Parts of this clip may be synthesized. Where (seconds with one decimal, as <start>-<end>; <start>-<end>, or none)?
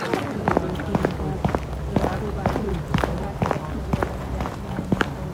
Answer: none